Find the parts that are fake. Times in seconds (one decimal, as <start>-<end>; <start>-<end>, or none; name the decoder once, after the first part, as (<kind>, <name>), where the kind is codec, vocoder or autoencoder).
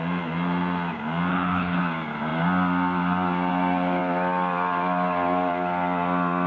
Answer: 1.3-1.8 (codec, HILCodec)